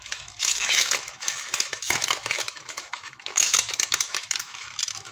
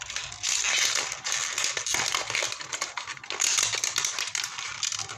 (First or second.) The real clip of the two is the second